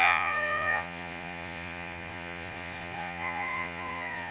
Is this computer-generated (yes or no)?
yes